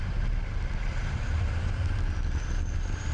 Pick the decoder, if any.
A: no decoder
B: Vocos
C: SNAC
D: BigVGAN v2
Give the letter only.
D